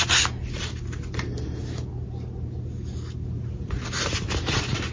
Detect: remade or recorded recorded